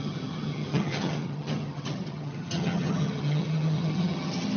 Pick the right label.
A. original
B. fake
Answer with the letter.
B